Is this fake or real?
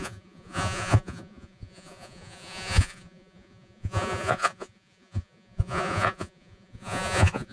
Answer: fake